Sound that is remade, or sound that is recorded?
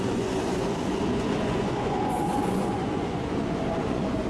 remade